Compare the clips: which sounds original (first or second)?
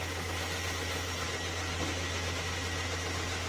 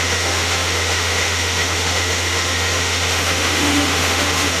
first